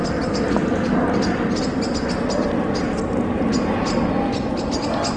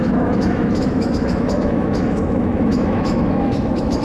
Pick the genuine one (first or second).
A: first